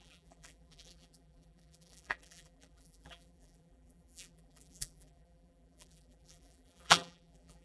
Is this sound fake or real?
fake